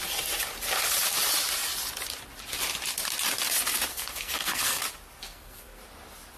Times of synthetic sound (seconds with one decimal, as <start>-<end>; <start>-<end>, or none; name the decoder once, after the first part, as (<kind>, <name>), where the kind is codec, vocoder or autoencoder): 3.9-4.8 (codec, SNAC); 5.2-5.8